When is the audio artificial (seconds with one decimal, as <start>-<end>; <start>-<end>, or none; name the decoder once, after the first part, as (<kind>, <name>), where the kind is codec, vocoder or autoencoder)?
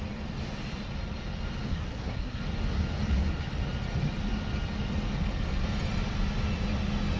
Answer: 1.7-2.4 (codec, SNAC)